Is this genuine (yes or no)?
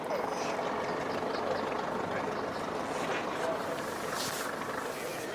yes